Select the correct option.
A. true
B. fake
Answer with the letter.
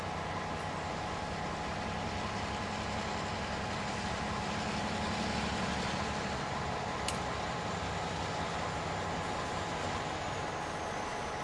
A